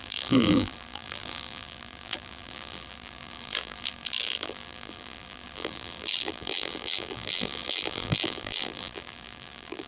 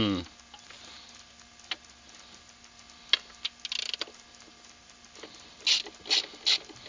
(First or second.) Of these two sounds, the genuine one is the second